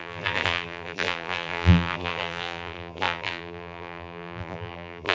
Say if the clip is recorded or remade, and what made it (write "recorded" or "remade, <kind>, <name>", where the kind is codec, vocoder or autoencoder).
remade, vocoder, BigVGAN v2